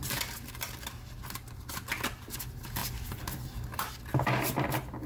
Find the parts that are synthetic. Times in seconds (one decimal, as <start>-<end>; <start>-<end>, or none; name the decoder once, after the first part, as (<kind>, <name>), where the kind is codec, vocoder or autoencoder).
none